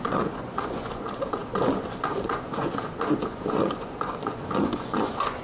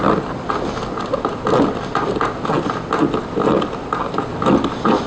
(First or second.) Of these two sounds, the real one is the second